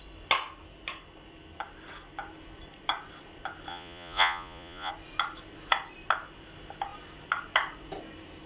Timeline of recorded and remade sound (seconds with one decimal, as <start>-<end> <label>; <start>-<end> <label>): 0.0-3.7 recorded; 3.7-4.9 remade; 4.9-8.5 recorded